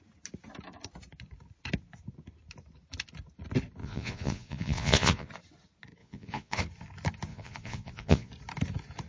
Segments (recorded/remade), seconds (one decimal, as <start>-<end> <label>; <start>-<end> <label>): 0.0-3.8 recorded; 3.8-5.3 remade; 5.3-6.0 recorded; 6.0-6.6 remade; 6.6-7.3 recorded; 7.3-8.3 remade; 8.3-9.1 recorded